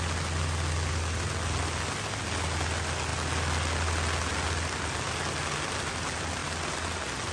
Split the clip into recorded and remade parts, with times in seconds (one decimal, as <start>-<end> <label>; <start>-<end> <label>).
0.0-7.3 recorded